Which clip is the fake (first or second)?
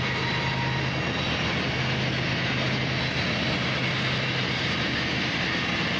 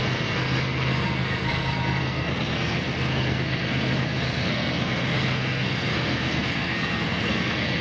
second